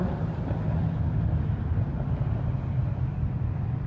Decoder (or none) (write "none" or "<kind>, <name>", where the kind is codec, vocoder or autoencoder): none